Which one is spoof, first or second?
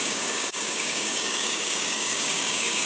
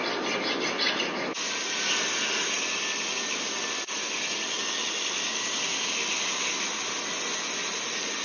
first